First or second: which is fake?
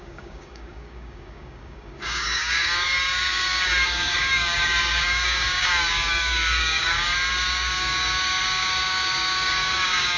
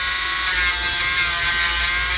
first